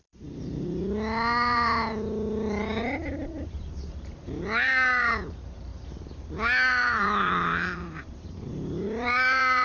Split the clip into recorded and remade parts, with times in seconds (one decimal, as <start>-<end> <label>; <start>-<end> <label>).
0.0-5.7 remade; 5.7-6.7 recorded; 6.7-9.6 remade